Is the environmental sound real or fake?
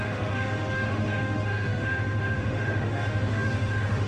fake